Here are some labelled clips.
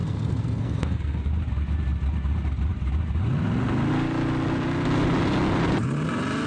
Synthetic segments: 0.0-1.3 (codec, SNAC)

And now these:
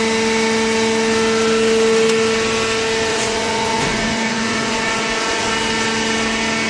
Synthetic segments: 3.1-5.5 (vocoder, Vocos)

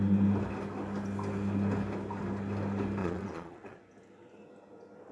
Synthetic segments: 3.0-3.8 (vocoder, Vocos)

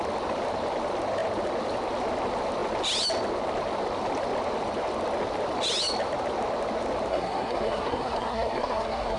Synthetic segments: 7.1-9.2 (codec, SNAC)

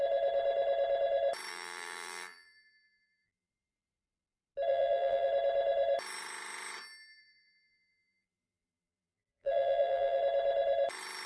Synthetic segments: 1.5-3.5 (vocoder, BigVGAN v2); 4.7-5.3; 7.2-10.2

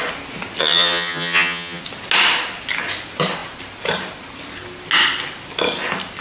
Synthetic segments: 0.6-1.8 (vocoder, HiFi-GAN)